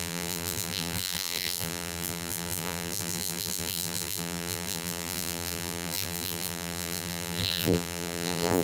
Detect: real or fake fake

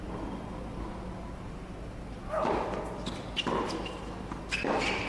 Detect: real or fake real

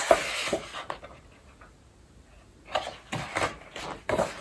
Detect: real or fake real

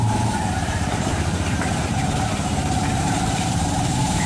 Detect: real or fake fake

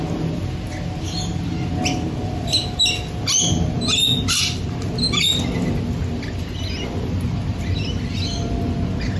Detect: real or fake real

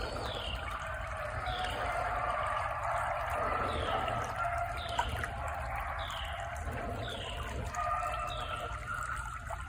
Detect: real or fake real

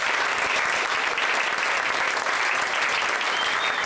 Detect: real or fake real